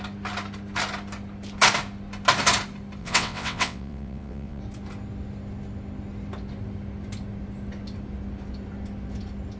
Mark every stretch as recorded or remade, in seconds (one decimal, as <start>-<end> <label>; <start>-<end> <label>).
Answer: 0.0-3.0 recorded; 3.0-4.6 remade; 4.6-9.6 recorded